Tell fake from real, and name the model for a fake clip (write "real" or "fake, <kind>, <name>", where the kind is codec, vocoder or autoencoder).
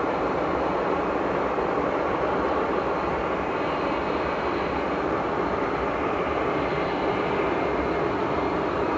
fake, vocoder, BigVGAN v2